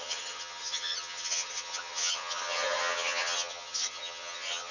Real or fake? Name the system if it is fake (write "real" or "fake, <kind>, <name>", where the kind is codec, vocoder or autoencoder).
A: fake, vocoder, HiFi-GAN